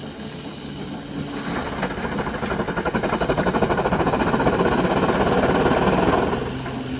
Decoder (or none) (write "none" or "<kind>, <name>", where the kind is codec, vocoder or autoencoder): none